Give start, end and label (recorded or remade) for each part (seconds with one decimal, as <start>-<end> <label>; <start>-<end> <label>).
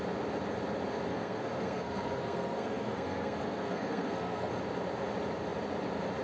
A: 0.0-1.1 recorded; 1.1-4.5 remade; 4.5-6.2 recorded